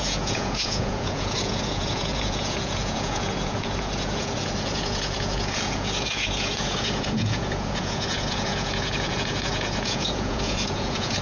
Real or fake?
fake